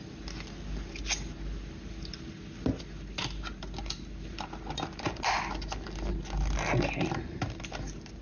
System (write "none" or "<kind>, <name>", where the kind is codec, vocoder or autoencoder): none